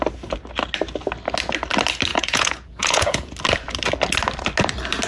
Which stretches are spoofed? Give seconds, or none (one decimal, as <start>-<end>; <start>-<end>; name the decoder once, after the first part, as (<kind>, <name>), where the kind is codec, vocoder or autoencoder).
2.1-3.3 (vocoder, Vocos)